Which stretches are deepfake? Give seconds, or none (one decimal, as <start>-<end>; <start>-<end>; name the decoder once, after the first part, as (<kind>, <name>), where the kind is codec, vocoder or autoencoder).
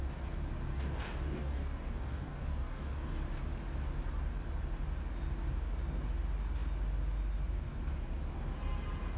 0.7-3.2 (codec, DAC)